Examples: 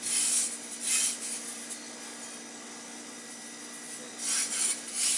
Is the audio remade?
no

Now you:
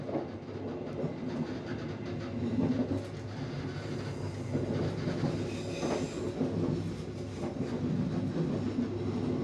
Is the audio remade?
no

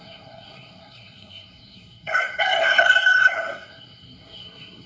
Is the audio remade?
yes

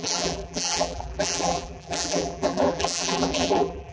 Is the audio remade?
yes